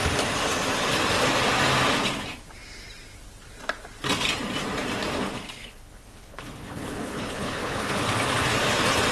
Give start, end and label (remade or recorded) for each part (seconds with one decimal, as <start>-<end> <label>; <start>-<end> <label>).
0.0-5.6 recorded; 5.6-8.0 remade; 8.0-9.1 recorded